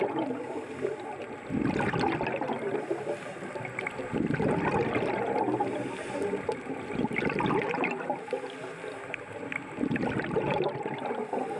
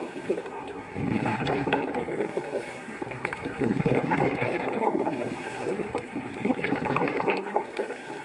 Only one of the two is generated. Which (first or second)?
second